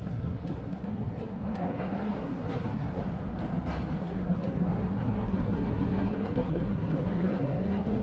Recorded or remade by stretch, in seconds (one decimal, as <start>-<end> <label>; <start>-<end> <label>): 0.0-3.0 remade; 3.0-4.0 recorded; 4.0-8.0 remade